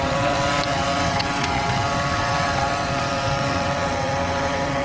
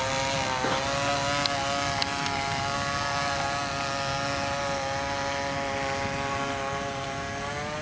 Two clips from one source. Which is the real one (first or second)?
second